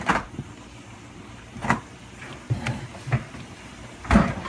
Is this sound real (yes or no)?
no